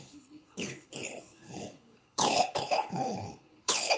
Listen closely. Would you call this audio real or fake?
fake